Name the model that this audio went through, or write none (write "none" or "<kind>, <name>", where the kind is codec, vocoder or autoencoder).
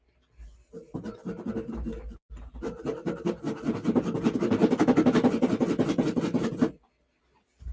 none